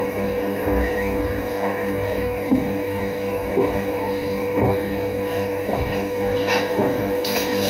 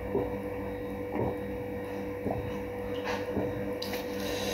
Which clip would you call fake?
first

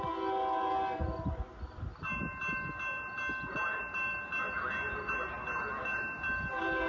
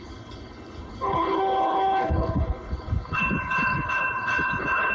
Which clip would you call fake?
second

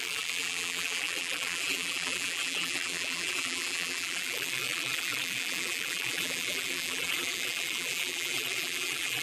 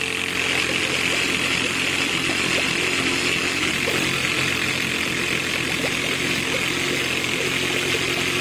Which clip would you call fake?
first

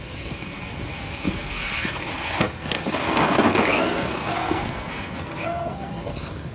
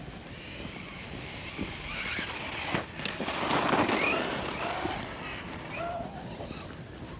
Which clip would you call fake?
first